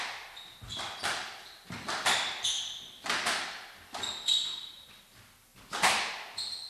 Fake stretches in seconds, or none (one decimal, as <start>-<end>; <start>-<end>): 0.7-4.7; 5.5-6.1

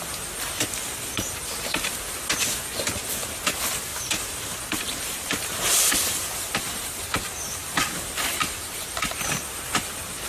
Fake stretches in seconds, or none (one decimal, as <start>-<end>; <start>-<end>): 3.9-6.9; 7.6-9.2

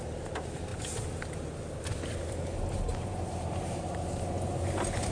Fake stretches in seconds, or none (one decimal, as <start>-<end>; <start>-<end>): 2.9-4.0

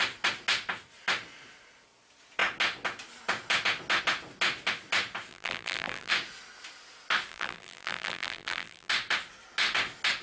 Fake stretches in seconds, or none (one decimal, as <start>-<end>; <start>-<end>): 5.3-6.1; 7.3-8.9

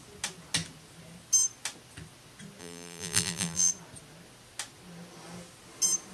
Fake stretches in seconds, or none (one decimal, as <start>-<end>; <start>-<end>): 2.6-3.7

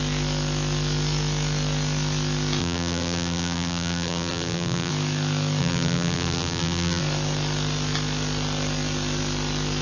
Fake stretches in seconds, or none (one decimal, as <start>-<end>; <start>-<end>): 2.6-4.9; 5.6-7.0

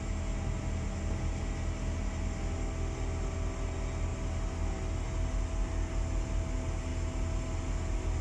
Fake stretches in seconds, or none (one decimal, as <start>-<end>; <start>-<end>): none